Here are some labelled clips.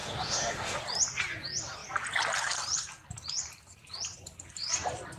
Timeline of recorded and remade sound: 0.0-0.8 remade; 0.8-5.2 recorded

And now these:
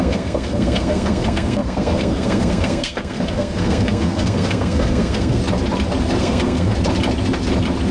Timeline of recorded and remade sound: 0.0-5.4 remade; 5.4-6.2 recorded; 6.2-6.7 remade; 6.7-7.9 recorded

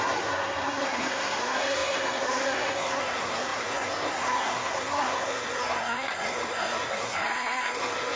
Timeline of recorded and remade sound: 0.0-8.2 remade

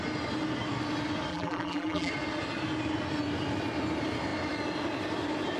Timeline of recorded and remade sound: 0.0-1.3 recorded; 1.3-2.1 remade; 2.1-5.6 recorded